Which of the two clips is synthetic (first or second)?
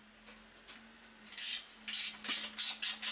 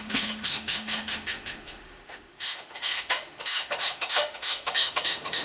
second